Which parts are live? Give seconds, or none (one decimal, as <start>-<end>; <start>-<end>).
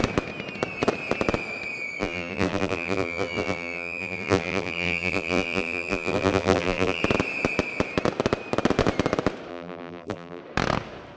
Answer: 0.0-2.0; 7.0-9.5; 10.4-11.2